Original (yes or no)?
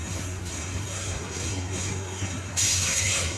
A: no